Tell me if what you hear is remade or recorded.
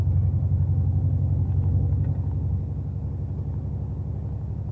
recorded